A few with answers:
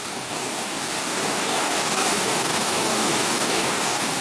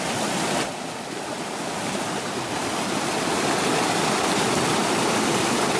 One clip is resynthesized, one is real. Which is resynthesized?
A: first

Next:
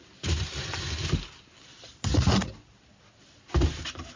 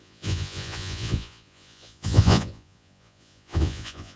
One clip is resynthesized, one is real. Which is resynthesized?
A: second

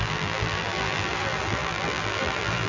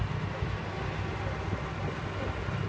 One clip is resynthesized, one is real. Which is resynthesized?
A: first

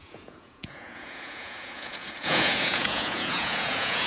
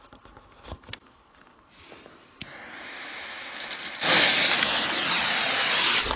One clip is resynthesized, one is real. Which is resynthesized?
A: first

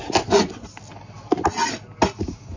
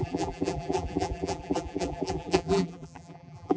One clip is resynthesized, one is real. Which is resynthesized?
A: second